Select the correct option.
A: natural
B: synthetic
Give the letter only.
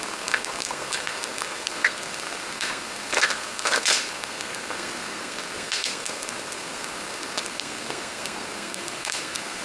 B